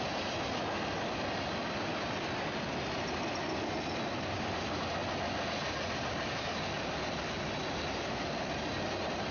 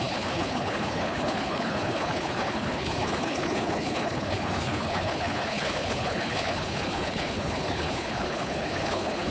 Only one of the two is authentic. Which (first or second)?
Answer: first